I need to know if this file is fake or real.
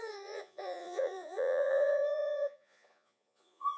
fake